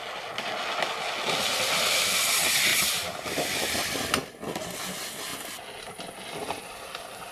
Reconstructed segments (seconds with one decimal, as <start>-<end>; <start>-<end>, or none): none

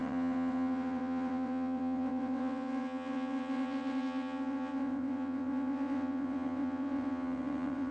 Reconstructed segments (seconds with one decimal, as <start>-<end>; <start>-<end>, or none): 0.0-7.9

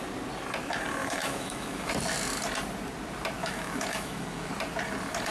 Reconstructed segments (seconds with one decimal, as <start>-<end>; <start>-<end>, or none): 1.0-1.9; 3.4-4.5

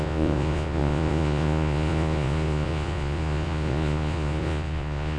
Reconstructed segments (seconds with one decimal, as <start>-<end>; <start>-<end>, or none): 0.0-5.2